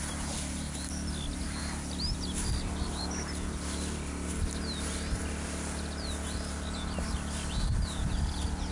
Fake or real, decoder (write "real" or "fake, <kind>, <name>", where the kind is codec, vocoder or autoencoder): real